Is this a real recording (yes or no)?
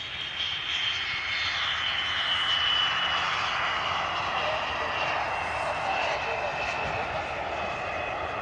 yes